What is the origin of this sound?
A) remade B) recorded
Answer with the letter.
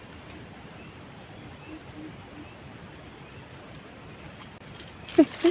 B